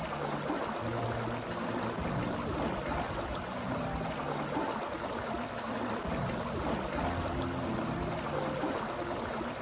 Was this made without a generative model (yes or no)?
yes